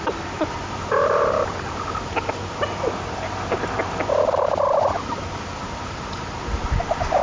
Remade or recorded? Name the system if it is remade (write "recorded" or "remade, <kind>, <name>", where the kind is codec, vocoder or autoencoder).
recorded